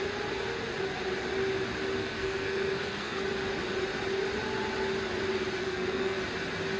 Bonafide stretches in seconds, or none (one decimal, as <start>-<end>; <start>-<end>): 0.0-2.0; 3.2-5.6; 6.2-6.8